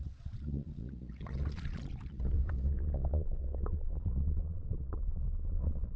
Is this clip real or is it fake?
fake